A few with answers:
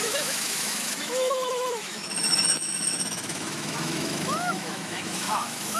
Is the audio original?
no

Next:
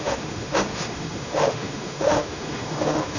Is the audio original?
no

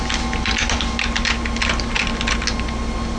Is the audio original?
yes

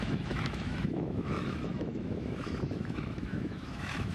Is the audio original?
no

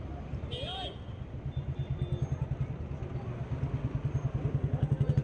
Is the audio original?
yes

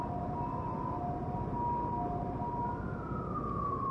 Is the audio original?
yes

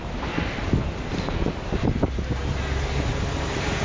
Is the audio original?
yes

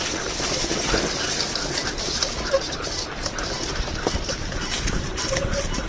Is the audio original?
yes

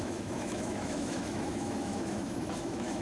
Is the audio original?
no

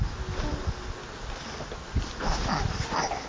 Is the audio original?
yes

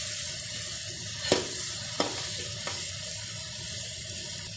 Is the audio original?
yes